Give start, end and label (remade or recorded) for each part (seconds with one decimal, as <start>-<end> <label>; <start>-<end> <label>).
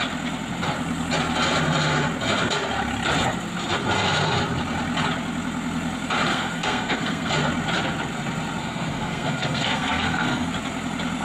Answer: 0.0-6.3 recorded; 6.3-7.3 remade; 7.3-8.6 recorded; 8.6-10.5 remade; 10.5-11.2 recorded